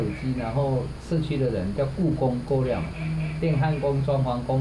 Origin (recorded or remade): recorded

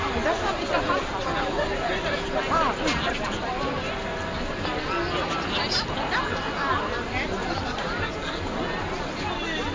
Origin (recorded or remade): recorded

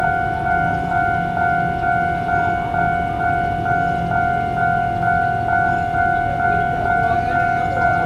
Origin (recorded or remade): recorded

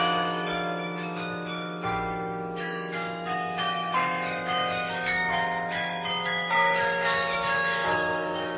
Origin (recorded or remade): remade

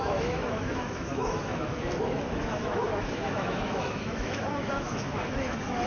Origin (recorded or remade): remade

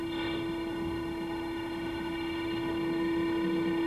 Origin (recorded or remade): remade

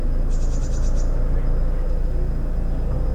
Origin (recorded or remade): recorded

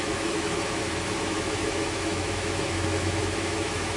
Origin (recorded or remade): remade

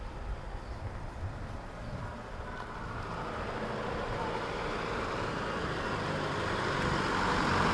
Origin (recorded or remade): recorded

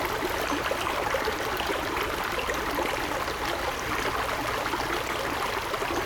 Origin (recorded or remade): recorded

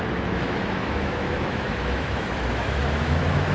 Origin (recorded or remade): remade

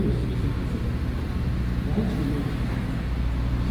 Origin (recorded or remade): recorded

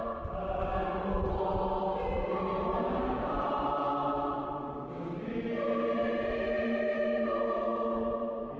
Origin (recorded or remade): recorded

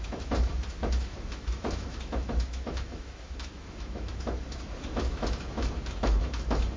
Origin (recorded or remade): remade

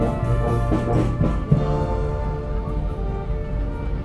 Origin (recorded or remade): recorded